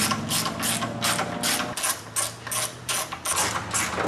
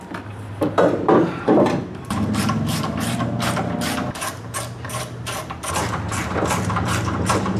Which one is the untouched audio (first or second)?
first